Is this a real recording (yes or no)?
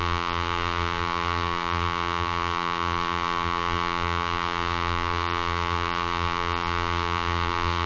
no